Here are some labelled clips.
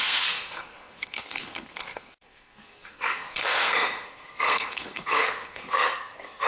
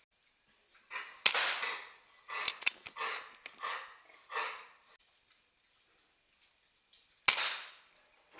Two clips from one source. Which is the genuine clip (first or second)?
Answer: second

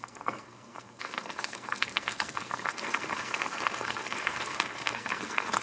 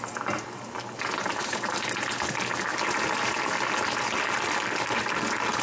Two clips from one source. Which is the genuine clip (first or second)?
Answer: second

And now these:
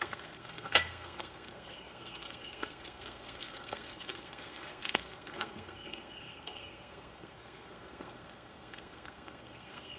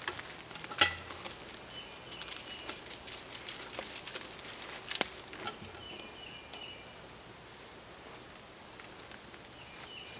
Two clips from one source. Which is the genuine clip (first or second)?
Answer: second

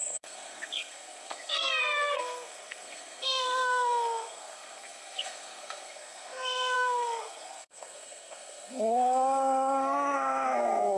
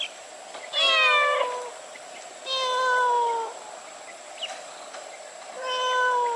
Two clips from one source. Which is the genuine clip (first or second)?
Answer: second